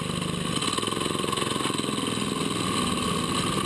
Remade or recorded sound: recorded